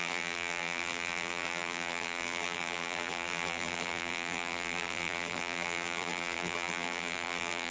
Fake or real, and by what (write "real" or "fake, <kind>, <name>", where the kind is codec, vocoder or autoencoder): fake, vocoder, BigVGAN v2